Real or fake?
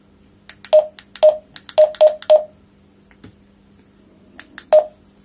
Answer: real